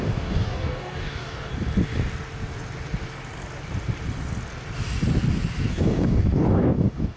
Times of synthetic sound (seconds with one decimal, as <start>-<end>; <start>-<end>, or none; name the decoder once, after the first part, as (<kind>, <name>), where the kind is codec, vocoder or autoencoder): 0.0-1.5 (codec, DAC); 5.7-7.2